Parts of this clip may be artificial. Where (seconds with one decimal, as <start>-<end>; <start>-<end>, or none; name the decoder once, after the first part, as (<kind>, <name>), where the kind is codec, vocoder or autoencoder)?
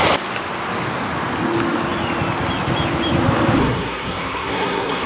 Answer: 3.6-5.1 (codec, SNAC)